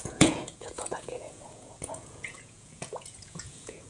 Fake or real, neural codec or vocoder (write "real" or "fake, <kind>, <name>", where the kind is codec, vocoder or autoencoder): fake, vocoder, Vocos